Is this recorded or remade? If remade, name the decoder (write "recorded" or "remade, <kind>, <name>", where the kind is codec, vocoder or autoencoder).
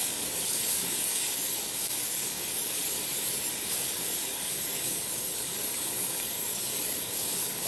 remade, codec, DAC